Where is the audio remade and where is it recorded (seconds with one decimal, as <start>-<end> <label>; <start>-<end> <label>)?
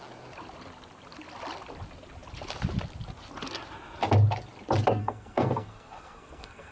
0.0-5.0 recorded; 5.0-6.7 remade